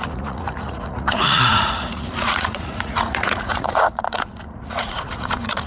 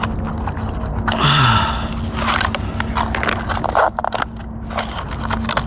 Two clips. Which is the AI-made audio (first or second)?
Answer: first